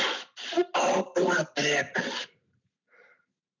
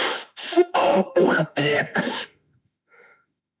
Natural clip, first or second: first